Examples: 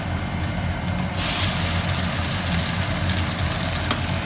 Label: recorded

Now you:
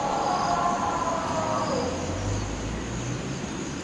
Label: recorded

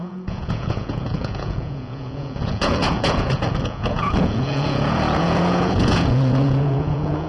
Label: remade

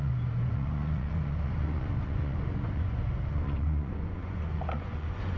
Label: remade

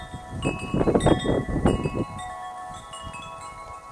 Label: recorded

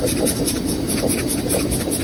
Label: recorded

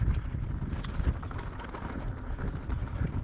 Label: recorded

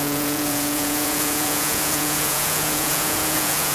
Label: remade